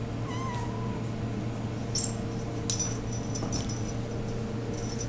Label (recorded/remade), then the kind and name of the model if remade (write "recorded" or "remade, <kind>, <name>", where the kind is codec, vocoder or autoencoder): recorded